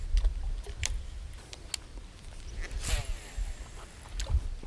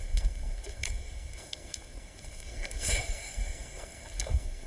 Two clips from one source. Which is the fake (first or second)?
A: second